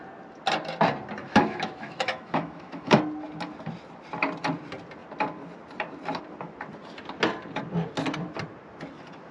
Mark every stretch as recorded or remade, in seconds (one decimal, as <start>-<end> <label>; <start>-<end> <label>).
0.0-1.2 recorded; 1.2-3.0 remade; 3.0-9.3 recorded